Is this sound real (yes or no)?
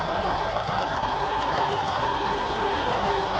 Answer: no